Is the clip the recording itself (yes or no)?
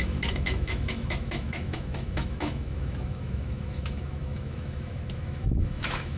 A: no